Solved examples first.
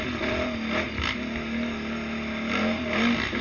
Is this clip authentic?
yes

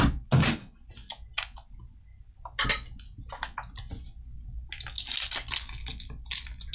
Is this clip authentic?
yes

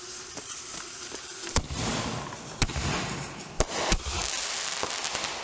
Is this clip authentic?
yes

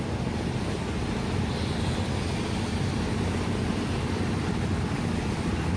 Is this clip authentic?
yes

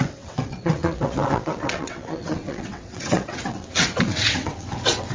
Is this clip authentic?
no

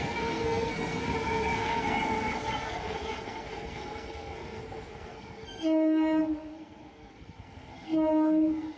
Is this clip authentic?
no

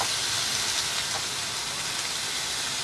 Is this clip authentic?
yes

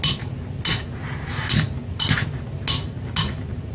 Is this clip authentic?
yes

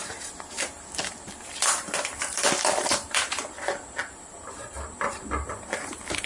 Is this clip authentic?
no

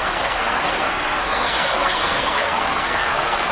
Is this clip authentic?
no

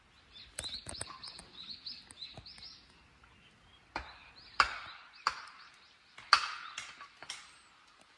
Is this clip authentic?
yes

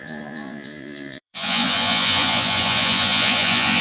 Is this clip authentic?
no